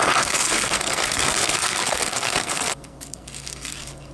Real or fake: fake